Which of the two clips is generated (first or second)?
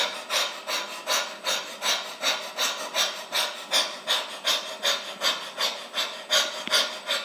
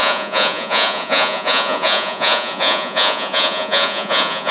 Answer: second